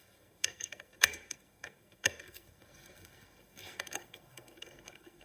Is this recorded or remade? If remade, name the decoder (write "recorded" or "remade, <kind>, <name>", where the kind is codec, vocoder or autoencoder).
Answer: remade, codec, SNAC